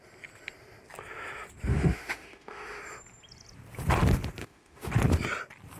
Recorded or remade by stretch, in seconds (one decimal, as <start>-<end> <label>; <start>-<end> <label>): 0.0-1.7 recorded; 1.7-2.8 remade; 2.8-4.4 recorded; 4.4-4.9 remade; 4.9-5.8 recorded